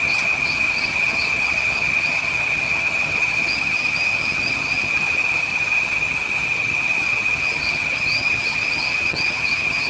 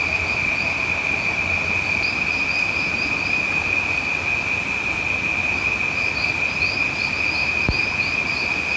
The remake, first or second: first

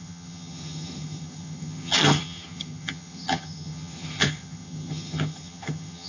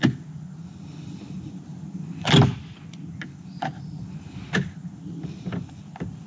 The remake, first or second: first